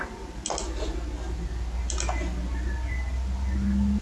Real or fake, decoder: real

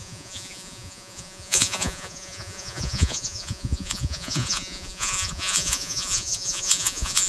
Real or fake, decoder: fake, vocoder, Vocos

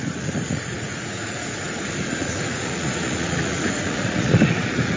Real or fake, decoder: fake, vocoder, Vocos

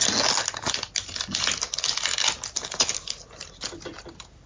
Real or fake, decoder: real